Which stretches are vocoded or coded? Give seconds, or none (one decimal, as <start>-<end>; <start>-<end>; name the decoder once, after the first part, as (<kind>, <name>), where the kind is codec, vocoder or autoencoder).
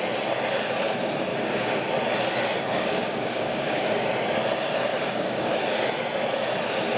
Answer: 1.3-1.8 (codec, DAC); 2.7-4.1; 4.9-5.6